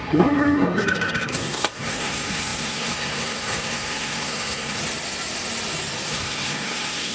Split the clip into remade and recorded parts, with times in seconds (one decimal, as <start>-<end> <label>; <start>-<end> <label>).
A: 0.0-4.8 remade; 4.8-6.1 recorded; 6.1-7.1 remade